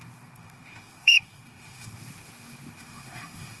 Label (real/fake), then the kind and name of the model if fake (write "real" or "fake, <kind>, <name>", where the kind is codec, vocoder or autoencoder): fake, autoencoder, DAC-VAE